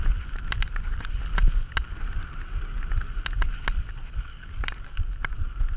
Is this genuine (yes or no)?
yes